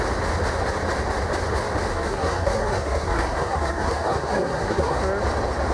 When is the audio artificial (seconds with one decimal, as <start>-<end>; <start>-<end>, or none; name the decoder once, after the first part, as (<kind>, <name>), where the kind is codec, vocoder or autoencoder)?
1.9-5.0 (codec, SNAC)